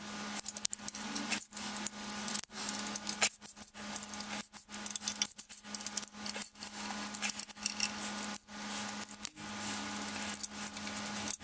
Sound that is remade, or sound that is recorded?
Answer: recorded